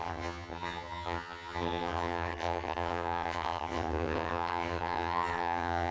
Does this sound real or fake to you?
fake